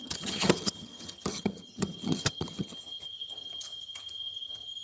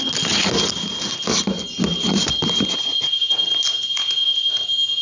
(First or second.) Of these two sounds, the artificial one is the first